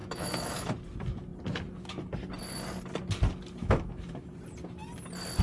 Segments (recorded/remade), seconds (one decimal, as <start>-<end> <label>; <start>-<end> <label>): 0.0-0.7 remade; 0.7-3.6 recorded; 3.6-4.3 remade; 4.3-5.4 recorded